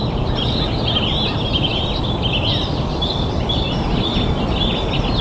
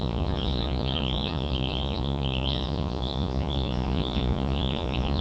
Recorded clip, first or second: first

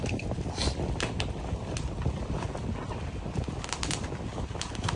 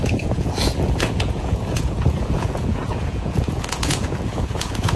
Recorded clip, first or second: first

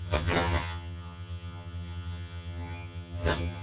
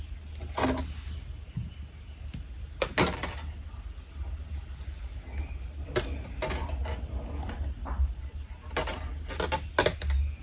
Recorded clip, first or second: second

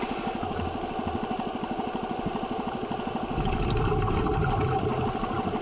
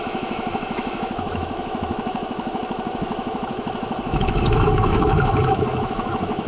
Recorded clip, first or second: first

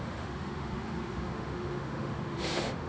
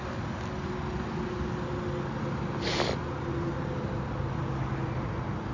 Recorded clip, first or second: second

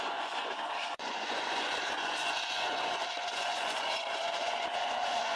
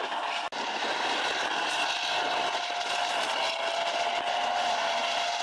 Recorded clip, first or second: second